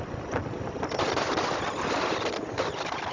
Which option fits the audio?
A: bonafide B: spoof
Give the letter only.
A